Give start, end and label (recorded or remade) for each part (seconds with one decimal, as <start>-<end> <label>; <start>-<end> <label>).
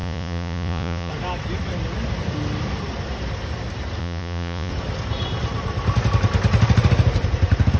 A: 0.0-1.1 remade; 1.1-4.0 recorded; 4.0-4.7 remade; 4.7-7.8 recorded